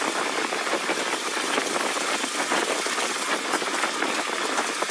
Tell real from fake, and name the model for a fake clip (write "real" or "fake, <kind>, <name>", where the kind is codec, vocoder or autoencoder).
real